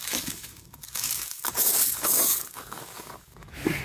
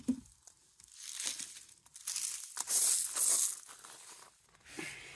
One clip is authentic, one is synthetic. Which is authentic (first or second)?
second